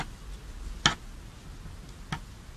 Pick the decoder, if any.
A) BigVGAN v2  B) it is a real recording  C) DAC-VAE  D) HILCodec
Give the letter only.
B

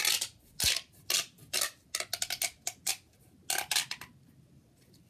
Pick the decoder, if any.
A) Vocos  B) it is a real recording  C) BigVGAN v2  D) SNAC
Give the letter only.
B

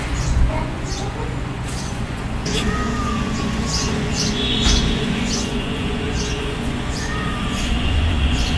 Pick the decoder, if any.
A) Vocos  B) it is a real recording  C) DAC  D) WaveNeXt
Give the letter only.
A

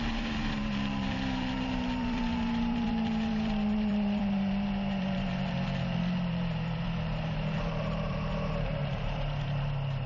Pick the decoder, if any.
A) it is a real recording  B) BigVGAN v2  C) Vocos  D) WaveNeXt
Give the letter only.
B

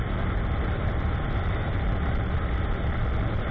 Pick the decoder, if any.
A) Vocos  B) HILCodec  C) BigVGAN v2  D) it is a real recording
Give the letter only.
D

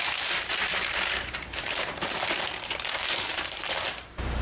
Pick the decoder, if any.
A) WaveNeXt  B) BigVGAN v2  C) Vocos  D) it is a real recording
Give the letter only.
B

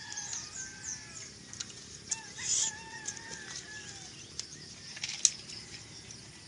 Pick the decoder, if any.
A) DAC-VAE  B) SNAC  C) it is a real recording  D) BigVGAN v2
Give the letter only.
C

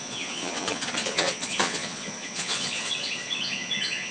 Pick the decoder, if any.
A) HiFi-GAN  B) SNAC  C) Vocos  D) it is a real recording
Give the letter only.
C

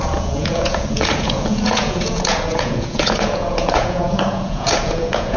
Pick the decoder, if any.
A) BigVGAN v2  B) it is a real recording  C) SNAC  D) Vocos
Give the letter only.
D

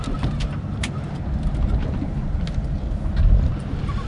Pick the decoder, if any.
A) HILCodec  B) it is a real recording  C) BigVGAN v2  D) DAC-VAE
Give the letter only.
B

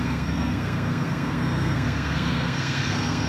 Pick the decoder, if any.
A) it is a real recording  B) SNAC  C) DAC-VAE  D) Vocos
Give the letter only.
B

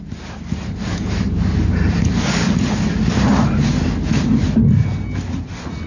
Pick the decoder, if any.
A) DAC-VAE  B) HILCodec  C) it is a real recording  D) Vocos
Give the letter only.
C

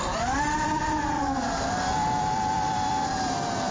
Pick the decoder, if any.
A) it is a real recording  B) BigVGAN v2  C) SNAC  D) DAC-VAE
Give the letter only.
B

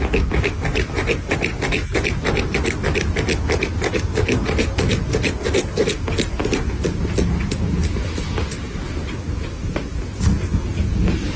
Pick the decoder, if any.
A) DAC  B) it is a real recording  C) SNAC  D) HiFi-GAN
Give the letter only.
B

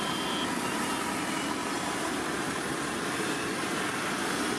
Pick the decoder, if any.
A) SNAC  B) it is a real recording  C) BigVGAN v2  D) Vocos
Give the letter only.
B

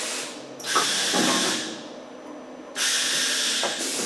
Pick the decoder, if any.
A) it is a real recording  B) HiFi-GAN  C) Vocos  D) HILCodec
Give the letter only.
A